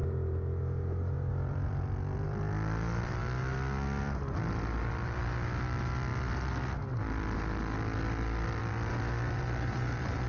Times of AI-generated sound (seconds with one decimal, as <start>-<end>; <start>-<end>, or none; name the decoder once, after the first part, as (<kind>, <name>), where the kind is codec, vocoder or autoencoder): 1.3-3.2 (vocoder, BigVGAN v2); 4.2-6.1; 8.6-10.3